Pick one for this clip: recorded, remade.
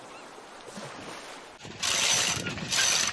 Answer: recorded